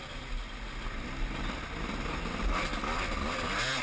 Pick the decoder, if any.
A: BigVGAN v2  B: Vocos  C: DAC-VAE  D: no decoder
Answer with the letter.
D